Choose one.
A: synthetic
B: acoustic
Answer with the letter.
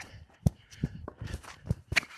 A